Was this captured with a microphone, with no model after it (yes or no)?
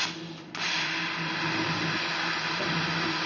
yes